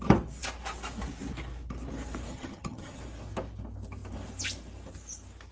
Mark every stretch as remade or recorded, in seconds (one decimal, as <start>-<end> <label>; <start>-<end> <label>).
0.0-2.3 recorded; 2.3-3.0 remade; 3.0-5.5 recorded

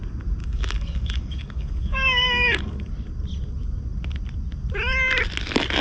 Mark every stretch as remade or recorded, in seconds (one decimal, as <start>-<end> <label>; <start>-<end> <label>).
0.0-0.4 recorded; 0.4-2.9 remade; 2.9-5.8 recorded

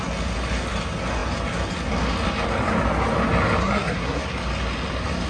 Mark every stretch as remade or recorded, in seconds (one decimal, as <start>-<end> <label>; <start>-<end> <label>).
0.0-3.6 recorded; 3.6-4.2 remade; 4.2-5.3 recorded

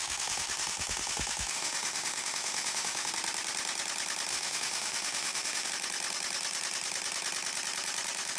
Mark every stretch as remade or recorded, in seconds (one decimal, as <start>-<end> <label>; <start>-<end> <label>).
0.0-3.1 remade; 3.1-4.3 recorded; 4.3-5.7 remade; 5.7-8.4 recorded

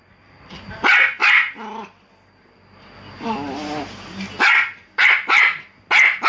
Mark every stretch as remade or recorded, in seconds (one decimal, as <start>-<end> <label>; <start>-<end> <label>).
0.0-6.3 recorded

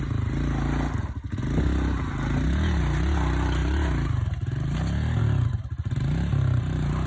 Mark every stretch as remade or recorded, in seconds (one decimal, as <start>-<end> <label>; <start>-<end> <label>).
0.0-7.1 recorded

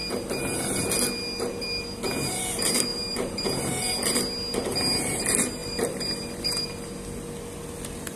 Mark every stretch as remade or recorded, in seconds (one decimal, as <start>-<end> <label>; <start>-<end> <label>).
0.0-2.9 recorded; 2.9-3.9 remade; 3.9-5.6 recorded; 5.6-6.6 remade; 6.6-8.2 recorded